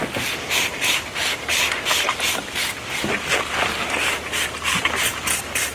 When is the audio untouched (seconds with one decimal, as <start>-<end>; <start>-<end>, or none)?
0.0-5.7